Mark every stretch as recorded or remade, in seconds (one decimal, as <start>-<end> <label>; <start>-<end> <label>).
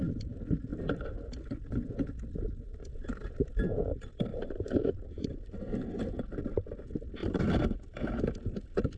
0.0-4.3 recorded; 4.3-5.7 remade; 5.7-7.2 recorded; 7.2-7.8 remade; 7.8-9.0 recorded